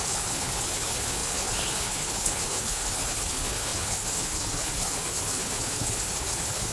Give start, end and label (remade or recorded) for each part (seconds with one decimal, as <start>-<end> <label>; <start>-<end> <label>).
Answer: 0.0-6.7 remade